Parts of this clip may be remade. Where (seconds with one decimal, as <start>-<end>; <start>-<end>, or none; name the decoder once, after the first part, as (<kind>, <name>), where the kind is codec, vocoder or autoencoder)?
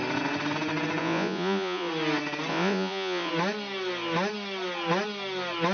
1.0-1.9 (vocoder, Vocos); 2.5-3.3